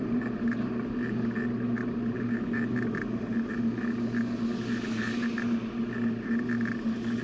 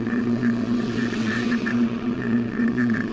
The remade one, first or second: second